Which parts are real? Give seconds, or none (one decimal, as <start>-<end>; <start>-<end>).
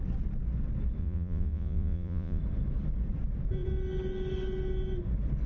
0.0-1.0; 2.4-5.5